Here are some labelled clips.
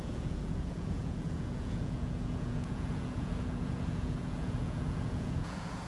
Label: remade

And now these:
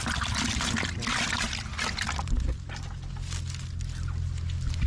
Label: recorded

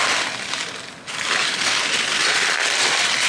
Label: recorded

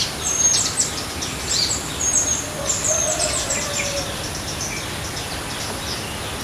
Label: recorded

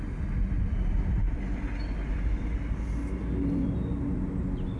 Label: recorded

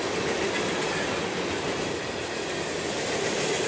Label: recorded